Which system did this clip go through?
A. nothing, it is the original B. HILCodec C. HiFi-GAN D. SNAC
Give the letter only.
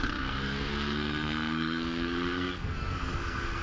D